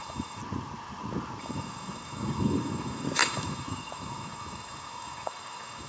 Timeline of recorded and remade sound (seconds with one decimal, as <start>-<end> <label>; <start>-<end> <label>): 0.0-0.4 remade; 0.4-1.4 recorded; 1.4-5.9 remade